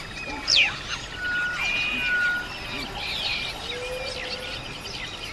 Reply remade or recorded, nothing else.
recorded